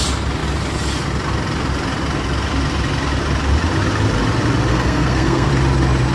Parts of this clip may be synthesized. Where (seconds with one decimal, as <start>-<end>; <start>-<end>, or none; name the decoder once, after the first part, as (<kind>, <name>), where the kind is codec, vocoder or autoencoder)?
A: 4.7-5.5 (codec, SNAC)